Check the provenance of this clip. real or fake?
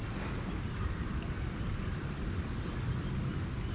real